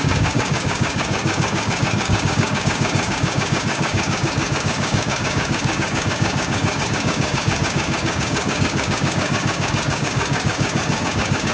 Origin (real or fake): fake